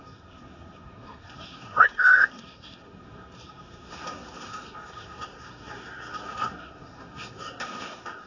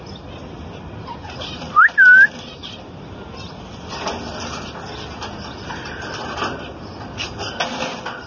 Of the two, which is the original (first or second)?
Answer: second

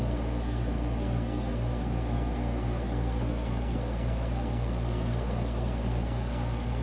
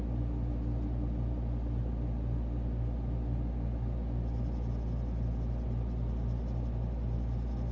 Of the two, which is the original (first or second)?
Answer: second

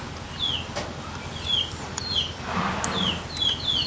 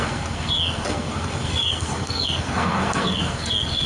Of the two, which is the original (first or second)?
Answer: first